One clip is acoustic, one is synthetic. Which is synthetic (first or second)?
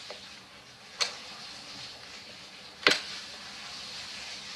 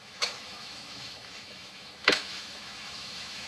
second